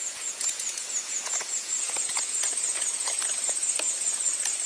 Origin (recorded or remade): remade